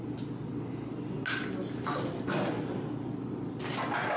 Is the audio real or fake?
real